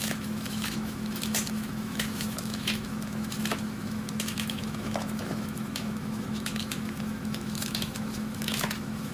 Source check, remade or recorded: remade